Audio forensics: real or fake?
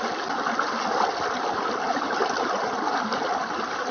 real